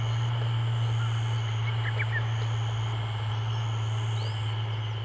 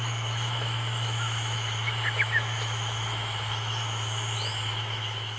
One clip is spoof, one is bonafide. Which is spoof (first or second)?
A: second